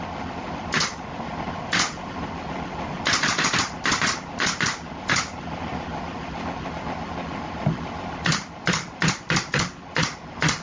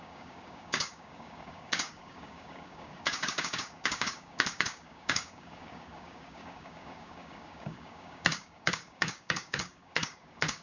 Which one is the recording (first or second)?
first